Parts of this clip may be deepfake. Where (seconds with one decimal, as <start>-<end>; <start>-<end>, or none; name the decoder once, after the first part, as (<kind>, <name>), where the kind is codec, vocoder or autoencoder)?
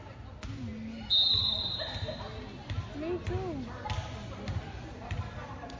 none